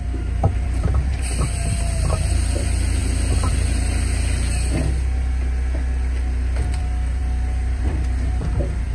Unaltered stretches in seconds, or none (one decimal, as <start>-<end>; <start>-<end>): 3.0-6.7